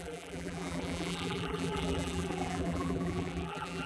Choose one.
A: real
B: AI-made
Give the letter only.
B